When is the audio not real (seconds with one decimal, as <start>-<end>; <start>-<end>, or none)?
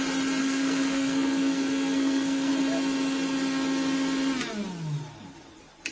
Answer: 0.4-2.5